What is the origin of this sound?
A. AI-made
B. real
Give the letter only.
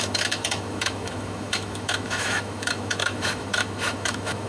A